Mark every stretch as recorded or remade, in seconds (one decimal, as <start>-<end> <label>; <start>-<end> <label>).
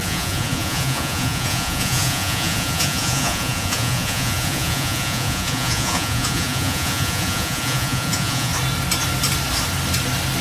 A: 0.0-8.5 remade; 8.5-10.4 recorded